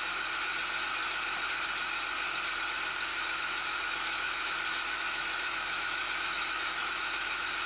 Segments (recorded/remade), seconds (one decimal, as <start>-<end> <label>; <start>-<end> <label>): 0.0-3.1 recorded; 3.1-7.7 remade